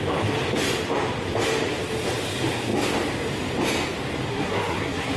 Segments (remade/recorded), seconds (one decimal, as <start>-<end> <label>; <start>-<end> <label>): 0.0-4.3 recorded; 4.3-5.2 remade